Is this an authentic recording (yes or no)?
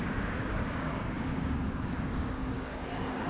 no